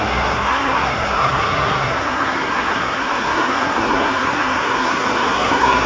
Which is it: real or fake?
fake